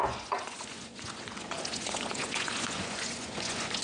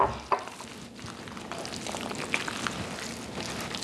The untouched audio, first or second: second